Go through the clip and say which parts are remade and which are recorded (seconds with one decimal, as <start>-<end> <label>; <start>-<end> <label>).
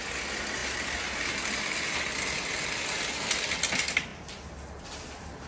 0.0-5.5 recorded